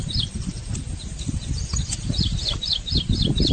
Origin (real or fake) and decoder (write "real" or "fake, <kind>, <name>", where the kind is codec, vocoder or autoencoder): real